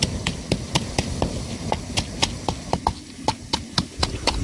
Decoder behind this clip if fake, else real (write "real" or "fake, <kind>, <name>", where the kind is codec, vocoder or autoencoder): real